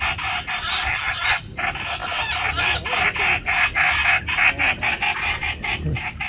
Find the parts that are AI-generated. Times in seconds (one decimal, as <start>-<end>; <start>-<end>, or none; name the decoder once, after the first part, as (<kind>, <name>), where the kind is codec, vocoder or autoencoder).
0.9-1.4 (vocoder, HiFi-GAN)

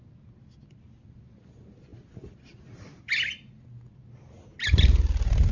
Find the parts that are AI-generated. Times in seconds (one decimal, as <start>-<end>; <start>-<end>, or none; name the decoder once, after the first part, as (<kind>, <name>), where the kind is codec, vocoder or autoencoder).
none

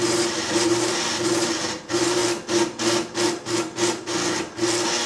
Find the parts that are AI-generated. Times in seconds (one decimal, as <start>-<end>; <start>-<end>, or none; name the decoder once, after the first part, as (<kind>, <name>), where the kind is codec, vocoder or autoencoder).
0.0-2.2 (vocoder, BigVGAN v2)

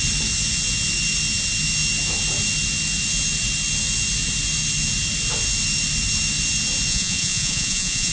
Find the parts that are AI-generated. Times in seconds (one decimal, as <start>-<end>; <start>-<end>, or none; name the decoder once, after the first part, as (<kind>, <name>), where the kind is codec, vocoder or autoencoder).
6.9-8.1 (vocoder, Vocos)

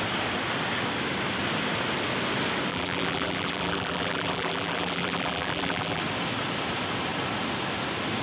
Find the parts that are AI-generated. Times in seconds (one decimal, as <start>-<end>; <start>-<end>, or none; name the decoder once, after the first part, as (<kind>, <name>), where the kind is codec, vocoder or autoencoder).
2.7-6.0 (vocoder, BigVGAN v2)

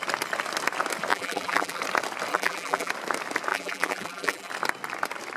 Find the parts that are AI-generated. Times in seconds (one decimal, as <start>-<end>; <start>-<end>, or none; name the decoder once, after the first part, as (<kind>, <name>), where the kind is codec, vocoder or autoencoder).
1.1-1.8 (vocoder, BigVGAN v2); 2.3-2.9; 3.5-4.5

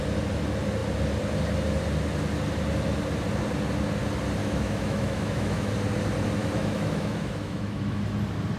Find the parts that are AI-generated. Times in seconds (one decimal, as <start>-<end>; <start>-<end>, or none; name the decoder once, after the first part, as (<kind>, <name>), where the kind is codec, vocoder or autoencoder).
4.4-5.7 (autoencoder, DAC-VAE); 6.4-8.0

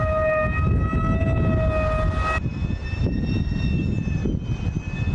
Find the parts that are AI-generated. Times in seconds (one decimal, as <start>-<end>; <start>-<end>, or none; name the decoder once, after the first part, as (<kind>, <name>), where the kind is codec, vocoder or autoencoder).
none